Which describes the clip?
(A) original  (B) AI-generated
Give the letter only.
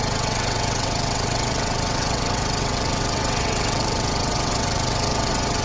B